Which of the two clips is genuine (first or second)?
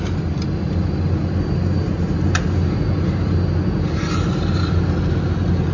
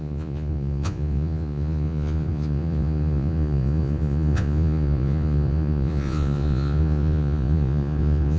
first